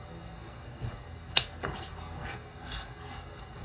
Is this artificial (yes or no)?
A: yes